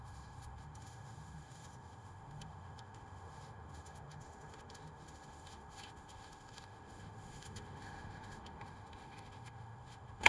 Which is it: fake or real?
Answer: fake